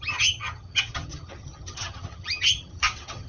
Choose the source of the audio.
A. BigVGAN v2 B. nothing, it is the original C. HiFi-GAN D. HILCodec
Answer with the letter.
C